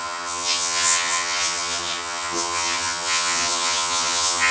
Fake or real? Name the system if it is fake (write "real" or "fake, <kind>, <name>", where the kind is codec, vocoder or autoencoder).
fake, vocoder, HiFi-GAN